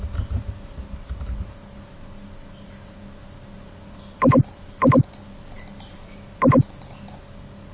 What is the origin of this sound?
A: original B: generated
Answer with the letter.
A